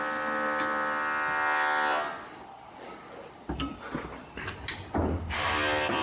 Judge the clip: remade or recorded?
recorded